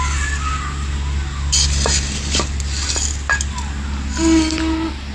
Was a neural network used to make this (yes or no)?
no